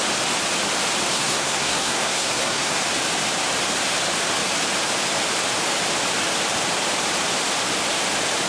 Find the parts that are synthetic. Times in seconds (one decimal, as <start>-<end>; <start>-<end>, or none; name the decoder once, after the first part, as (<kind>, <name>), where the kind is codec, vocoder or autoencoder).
1.1-2.8 (codec, SNAC)